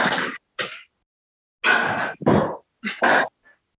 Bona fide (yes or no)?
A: yes